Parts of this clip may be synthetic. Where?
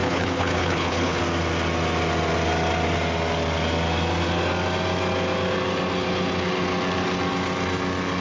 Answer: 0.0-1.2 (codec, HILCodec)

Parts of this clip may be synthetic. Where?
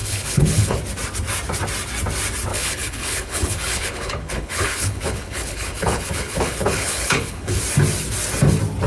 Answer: 0.0-0.8 (codec, HILCodec); 2.5-7.6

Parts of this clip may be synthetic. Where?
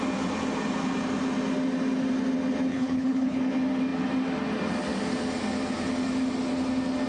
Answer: 2.7-3.4 (codec, HILCodec)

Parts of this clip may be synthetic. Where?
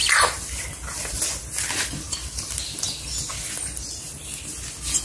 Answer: none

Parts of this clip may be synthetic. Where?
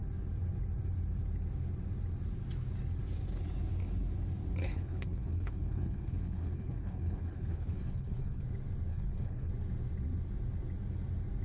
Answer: 4.6-8.4 (codec, HILCodec); 8.9-9.5